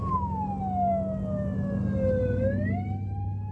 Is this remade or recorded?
recorded